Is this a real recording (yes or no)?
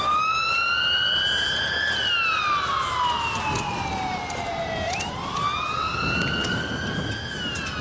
yes